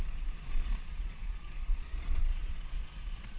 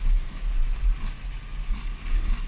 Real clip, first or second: second